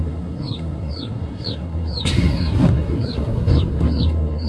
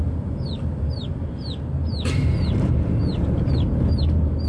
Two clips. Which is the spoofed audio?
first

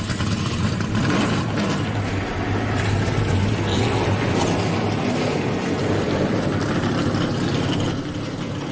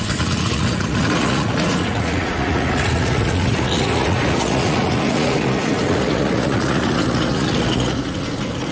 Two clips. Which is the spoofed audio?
second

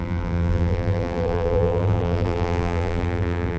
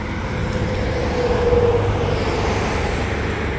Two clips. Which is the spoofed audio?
first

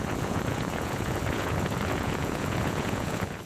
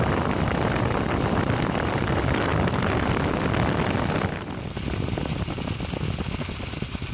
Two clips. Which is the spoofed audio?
first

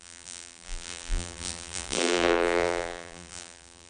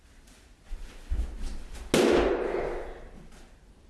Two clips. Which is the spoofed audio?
first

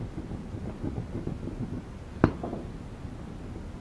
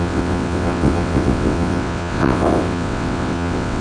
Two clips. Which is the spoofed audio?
second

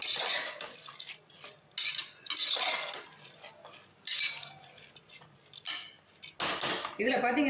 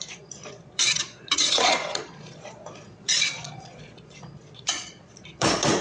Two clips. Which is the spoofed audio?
second